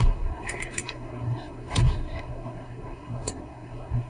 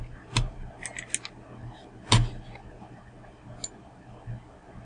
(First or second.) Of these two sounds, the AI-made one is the first